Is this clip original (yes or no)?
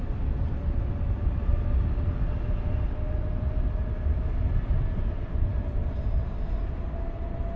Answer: yes